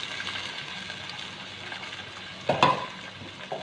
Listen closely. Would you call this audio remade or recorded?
recorded